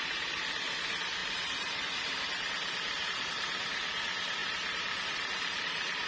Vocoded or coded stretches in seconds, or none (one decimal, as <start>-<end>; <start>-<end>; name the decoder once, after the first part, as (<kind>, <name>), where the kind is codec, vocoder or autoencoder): 1.2-3.3 (vocoder, BigVGAN v2); 4.4-6.1